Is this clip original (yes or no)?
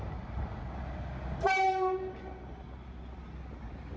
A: yes